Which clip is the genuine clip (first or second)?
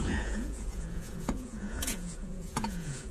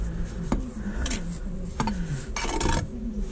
second